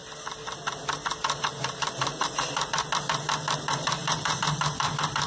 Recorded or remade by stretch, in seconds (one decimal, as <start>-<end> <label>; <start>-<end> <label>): 0.0-1.7 recorded; 1.7-2.7 remade; 2.7-4.0 recorded; 4.0-5.3 remade